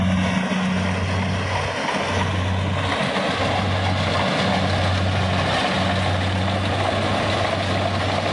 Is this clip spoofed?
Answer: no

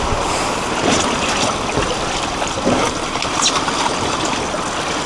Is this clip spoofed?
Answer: no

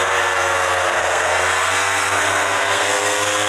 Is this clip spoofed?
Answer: yes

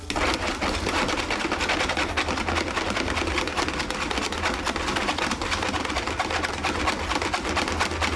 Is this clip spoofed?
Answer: no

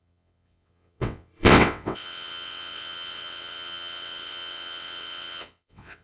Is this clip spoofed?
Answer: yes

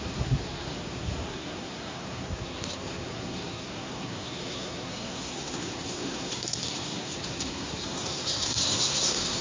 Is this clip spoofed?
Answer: yes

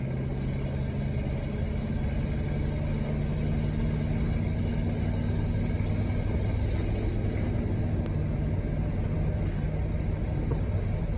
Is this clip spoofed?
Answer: no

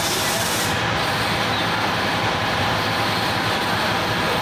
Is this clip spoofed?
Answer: no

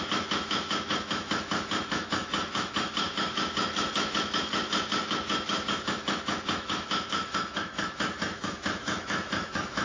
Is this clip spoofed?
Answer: yes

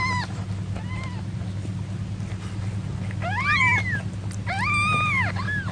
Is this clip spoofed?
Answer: no